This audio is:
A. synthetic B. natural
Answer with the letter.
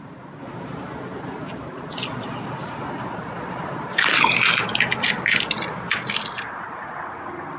B